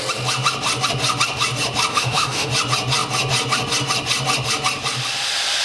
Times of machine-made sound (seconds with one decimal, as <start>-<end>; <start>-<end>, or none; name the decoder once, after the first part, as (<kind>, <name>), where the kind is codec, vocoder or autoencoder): 1.9-2.5 (autoencoder, DAC-VAE)